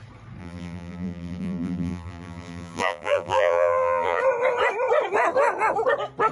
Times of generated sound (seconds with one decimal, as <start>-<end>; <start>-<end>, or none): 0.4-4.2

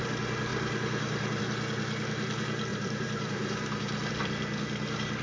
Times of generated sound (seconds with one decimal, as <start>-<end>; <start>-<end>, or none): 0.5-1.4; 2.7-4.1

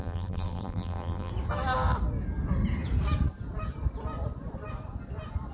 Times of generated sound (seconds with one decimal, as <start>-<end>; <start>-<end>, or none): 0.0-1.3

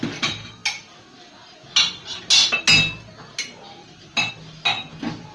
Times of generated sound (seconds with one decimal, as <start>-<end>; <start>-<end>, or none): 3.8-4.3